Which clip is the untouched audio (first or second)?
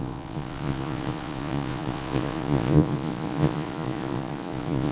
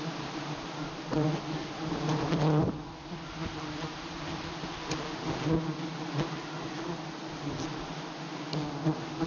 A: second